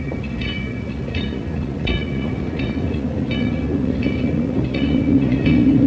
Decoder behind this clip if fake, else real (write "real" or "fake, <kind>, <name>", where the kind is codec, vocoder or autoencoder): fake, vocoder, Vocos